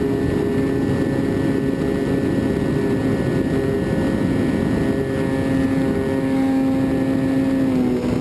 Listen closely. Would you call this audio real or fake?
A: real